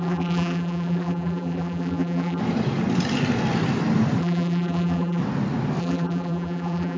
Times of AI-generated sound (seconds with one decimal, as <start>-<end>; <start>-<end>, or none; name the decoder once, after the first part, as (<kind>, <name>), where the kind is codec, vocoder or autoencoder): 0.0-2.4 (vocoder, BigVGAN v2); 4.2-5.2; 5.8-7.0